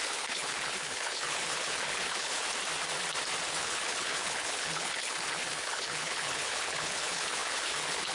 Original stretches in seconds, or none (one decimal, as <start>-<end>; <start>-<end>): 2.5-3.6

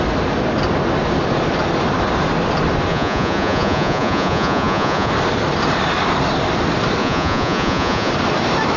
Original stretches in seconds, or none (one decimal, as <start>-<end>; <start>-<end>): 0.0-2.9; 5.1-7.0; 8.1-8.8

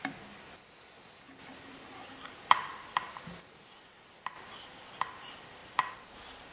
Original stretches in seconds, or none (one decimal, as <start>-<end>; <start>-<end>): 0.0-6.5

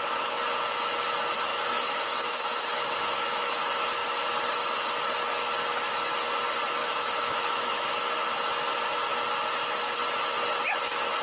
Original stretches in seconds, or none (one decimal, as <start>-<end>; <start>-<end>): 0.0-1.5; 3.6-6.8; 8.1-11.2

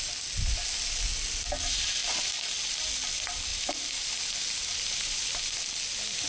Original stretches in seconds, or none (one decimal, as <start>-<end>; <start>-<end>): 0.0-3.5; 5.4-6.3

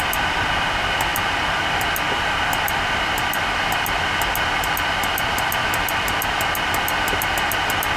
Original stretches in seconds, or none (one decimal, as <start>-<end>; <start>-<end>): 0.0-8.0

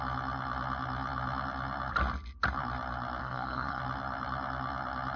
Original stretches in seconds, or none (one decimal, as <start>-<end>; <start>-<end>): 0.0-3.2; 3.8-5.2

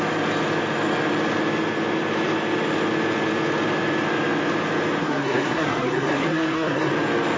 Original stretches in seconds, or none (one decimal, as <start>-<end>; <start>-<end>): 0.0-5.0; 6.9-7.4